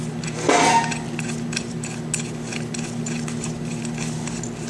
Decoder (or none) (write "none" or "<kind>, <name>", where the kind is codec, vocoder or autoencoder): none